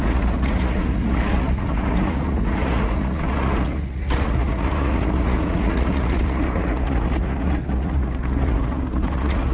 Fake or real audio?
fake